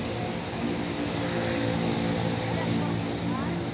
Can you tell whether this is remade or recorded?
recorded